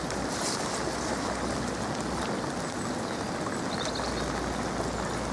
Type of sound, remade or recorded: recorded